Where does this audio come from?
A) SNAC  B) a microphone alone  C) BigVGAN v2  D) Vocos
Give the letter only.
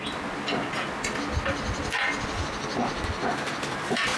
B